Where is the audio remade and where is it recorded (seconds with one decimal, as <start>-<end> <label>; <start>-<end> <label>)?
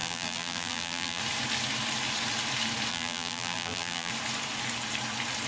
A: 0.0-1.2 remade; 1.2-2.9 recorded; 2.9-4.1 remade; 4.1-5.5 recorded